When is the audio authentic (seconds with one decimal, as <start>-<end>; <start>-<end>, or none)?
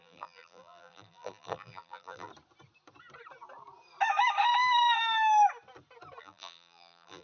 2.3-6.2